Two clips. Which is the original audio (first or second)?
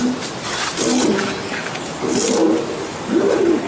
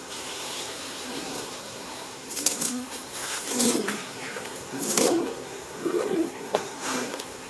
first